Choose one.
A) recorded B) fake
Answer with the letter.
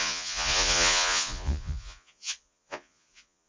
B